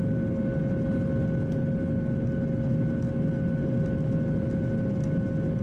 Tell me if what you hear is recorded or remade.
recorded